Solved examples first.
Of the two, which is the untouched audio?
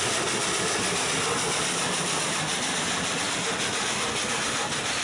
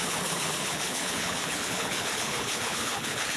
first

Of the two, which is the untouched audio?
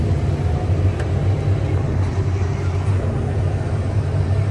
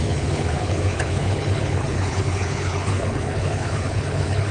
first